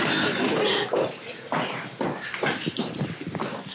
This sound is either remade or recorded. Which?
recorded